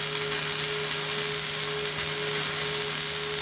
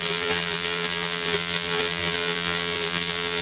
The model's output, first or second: second